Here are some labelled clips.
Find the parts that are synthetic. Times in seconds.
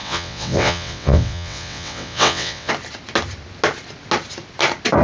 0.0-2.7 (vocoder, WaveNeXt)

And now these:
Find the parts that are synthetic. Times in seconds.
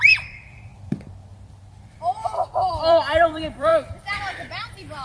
0.0-0.7 (vocoder, BigVGAN v2); 2.7-5.0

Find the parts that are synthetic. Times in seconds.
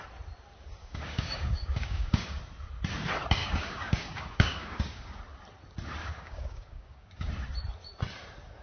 0.8-2.4 (codec, DAC); 3.4-5.2; 6.0-7.3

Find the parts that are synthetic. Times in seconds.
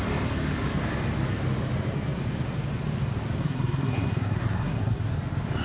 3.4-5.0 (codec, SNAC)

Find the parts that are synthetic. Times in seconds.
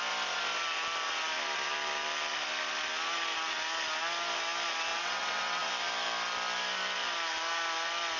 4.9-5.7 (vocoder, WaveNeXt)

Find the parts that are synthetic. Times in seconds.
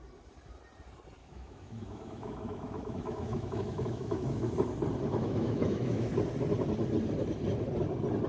1.2-4.5 (autoencoder, DAC-VAE); 5.1-6.1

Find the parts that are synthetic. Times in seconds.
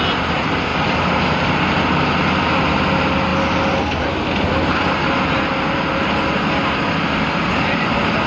none